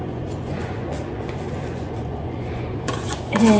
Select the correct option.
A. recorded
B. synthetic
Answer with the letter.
B